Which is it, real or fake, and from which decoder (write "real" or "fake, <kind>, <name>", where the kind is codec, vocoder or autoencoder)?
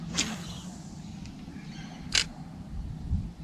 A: real